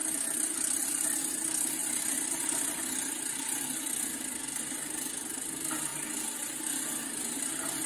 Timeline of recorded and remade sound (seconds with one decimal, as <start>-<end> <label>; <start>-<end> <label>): 0.0-1.2 remade; 1.2-1.8 recorded; 1.8-2.8 remade; 2.8-7.9 recorded